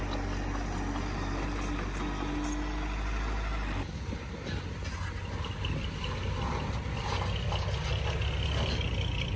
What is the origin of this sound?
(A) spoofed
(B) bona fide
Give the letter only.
B